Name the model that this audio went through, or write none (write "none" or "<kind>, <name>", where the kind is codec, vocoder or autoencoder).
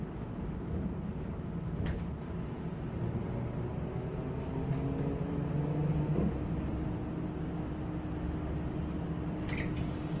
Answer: none